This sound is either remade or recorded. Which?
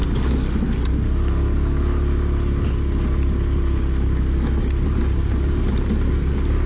recorded